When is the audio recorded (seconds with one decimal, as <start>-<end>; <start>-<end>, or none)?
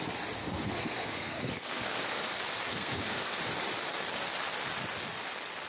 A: 0.0-0.4; 2.2-2.7; 3.4-5.7